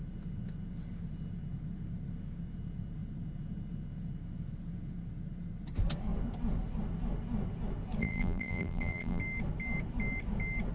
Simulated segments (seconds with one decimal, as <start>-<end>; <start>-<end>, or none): 8.0-9.2